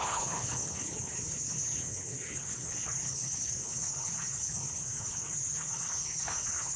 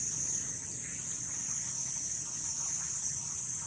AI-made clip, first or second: first